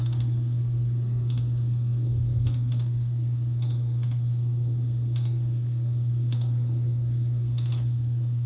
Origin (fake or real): fake